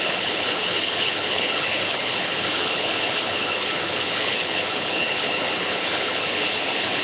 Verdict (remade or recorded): remade